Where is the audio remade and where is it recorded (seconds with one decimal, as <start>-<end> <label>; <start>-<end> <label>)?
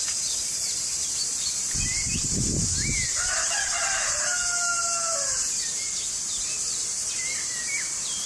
0.0-8.3 recorded